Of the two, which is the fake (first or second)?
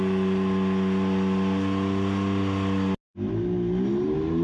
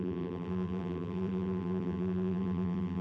second